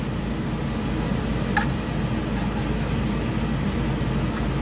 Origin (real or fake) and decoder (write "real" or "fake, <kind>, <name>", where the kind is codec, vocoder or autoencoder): real